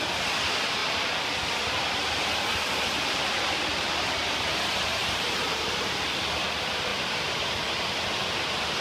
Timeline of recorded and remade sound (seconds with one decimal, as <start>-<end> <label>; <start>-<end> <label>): 0.0-5.0 recorded; 5.0-6.1 remade; 6.1-8.8 recorded

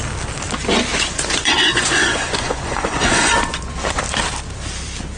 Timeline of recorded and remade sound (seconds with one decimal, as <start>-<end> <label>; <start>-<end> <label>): 0.0-0.9 recorded; 0.9-4.0 remade; 4.0-5.2 recorded

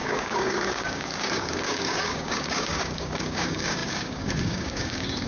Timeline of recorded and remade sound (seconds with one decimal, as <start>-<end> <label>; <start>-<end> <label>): 0.0-5.3 remade

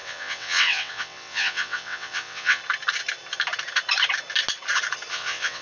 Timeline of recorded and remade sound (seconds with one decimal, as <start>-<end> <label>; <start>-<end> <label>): 0.0-2.6 remade; 2.6-5.1 recorded; 5.1-5.6 remade

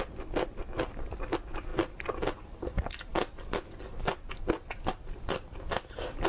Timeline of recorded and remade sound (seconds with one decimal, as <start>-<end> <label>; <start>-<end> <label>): 0.0-6.3 recorded

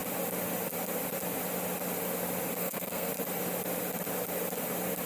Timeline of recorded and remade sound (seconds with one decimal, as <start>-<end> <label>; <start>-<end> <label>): 0.0-2.6 recorded; 2.6-3.1 remade; 3.1-5.1 recorded